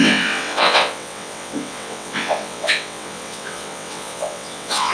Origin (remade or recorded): remade